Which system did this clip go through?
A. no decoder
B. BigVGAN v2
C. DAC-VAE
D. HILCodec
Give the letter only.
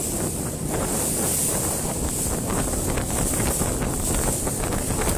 A